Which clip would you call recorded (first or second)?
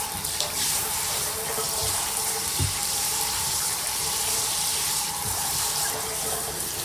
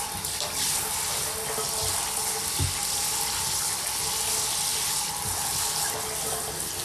second